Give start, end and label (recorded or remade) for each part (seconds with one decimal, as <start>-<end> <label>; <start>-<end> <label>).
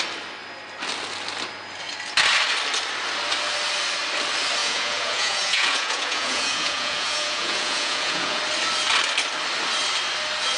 0.0-4.6 recorded; 4.6-8.4 remade; 8.4-10.6 recorded